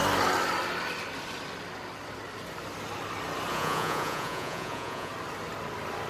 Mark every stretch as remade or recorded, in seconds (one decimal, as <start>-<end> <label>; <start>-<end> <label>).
0.0-3.5 recorded; 3.5-5.1 remade; 5.1-6.1 recorded